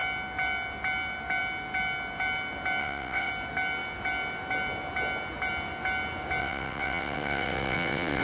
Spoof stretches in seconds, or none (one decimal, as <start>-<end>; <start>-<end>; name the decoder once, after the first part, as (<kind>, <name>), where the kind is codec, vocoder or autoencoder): 2.8-3.3 (vocoder, WaveNeXt); 6.4-8.2